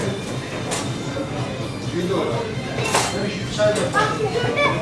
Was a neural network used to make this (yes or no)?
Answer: no